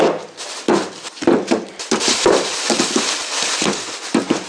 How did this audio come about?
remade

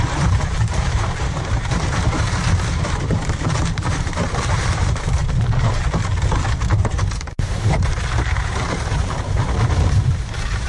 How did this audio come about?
remade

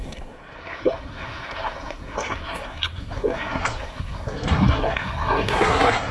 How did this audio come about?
remade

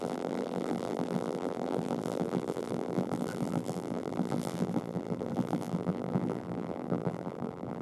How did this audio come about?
remade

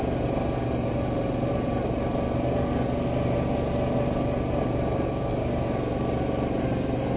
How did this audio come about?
recorded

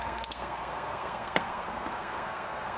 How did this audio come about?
remade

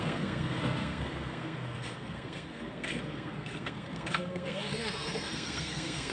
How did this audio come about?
remade